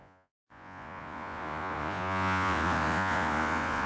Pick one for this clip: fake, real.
fake